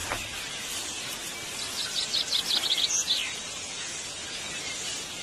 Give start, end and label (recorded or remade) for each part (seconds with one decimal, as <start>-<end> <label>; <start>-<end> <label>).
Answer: 0.0-3.4 recorded; 3.4-4.5 remade; 4.5-5.2 recorded